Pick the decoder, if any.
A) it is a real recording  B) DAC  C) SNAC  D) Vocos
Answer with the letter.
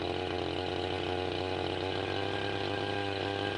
A